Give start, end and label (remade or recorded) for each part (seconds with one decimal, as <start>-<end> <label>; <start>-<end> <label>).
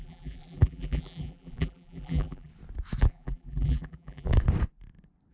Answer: 0.0-2.5 remade; 2.5-3.0 recorded; 3.0-4.3 remade; 4.3-5.3 recorded